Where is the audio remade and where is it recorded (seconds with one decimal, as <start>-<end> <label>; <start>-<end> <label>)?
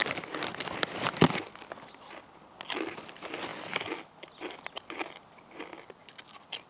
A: 0.0-6.7 recorded